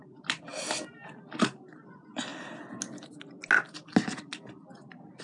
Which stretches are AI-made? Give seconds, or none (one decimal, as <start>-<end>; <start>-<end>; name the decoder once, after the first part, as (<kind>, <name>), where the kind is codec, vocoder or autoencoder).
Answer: none